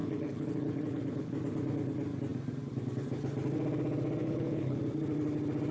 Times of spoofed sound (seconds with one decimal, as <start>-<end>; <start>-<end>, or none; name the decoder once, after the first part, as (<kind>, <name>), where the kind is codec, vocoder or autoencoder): 0.0-1.3 (codec, HILCodec); 4.2-4.8